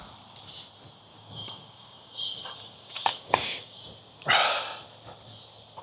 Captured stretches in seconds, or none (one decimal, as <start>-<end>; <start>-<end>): 0.0-1.1; 3.8-5.8